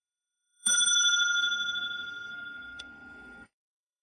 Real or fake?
fake